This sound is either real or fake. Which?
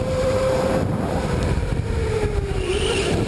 fake